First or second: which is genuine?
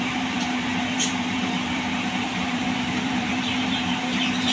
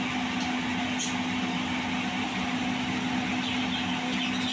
second